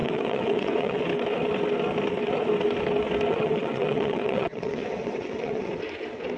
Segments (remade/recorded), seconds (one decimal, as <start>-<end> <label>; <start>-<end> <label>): 0.0-1.0 remade; 1.0-3.3 recorded; 3.3-5.7 remade; 5.7-6.4 recorded